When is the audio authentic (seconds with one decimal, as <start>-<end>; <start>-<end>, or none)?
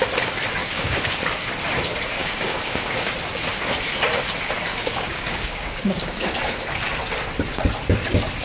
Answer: 0.0-0.6; 1.2-2.2; 3.1-4.7; 6.3-8.4